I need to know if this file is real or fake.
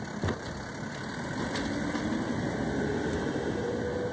real